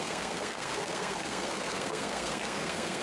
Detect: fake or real fake